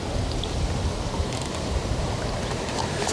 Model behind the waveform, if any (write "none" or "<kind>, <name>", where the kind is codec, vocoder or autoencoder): none